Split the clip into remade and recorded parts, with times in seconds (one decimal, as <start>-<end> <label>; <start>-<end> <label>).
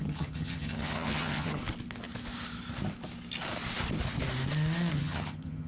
0.0-1.6 remade; 1.6-4.9 recorded; 4.9-5.7 remade